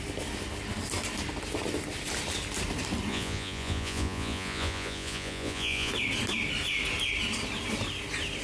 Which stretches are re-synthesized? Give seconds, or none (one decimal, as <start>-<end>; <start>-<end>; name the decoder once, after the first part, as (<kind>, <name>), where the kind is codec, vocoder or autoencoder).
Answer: 3.1-5.9 (vocoder, Vocos)